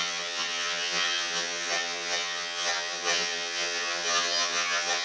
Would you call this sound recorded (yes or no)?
no